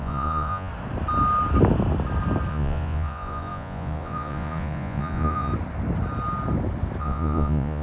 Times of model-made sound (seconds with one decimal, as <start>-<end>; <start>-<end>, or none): 0.0-0.7; 2.5-5.5; 7.0-7.8